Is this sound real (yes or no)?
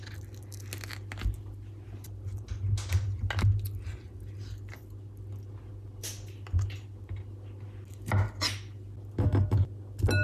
yes